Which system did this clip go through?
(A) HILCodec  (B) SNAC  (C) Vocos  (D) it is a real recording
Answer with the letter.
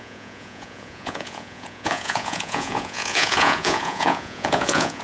C